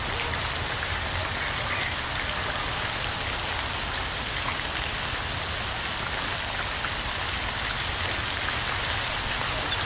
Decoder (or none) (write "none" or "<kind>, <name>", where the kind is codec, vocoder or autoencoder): none